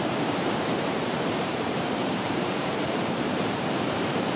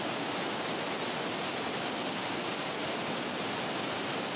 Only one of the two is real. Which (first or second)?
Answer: second